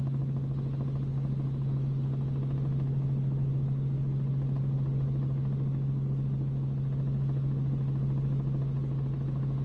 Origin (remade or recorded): recorded